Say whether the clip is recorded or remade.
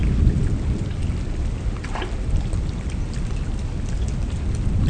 recorded